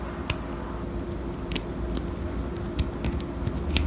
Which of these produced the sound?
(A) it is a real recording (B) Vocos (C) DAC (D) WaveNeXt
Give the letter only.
A